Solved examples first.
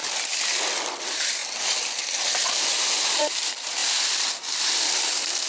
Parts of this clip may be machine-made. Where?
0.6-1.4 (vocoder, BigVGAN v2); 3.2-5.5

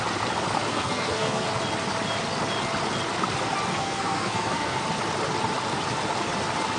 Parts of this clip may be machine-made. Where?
0.7-1.5 (codec, SNAC); 3.7-4.8

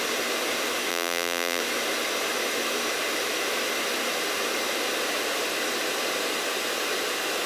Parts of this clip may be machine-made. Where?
0.9-1.6 (vocoder, BigVGAN v2)